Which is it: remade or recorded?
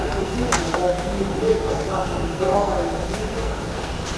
remade